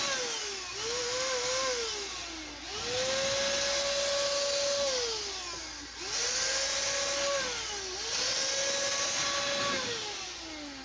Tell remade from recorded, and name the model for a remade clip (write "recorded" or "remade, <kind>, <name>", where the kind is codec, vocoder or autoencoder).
recorded